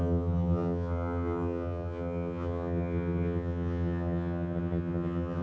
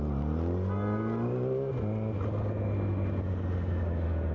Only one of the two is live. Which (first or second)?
second